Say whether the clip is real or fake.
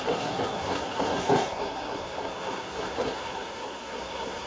fake